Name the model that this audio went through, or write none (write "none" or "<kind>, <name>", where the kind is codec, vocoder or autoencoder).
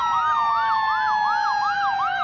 none